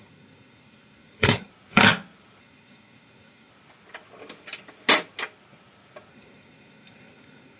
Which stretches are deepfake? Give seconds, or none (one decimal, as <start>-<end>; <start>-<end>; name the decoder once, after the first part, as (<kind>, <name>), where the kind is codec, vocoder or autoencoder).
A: 0.0-1.5 (codec, SNAC); 2.4-3.5; 6.1-7.6